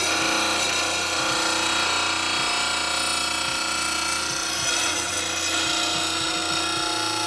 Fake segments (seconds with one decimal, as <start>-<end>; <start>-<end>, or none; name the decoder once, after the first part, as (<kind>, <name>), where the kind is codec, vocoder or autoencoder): 4.6-5.2 (vocoder, WaveNeXt)